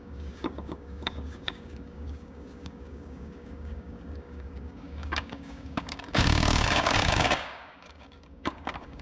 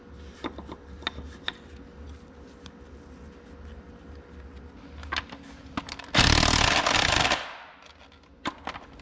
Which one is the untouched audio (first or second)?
second